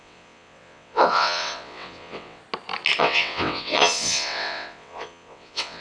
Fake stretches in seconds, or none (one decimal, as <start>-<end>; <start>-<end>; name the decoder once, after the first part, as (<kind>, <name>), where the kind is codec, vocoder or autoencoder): 0.0-2.4 (vocoder, WaveNeXt); 3.0-5.8